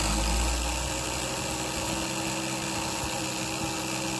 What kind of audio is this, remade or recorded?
recorded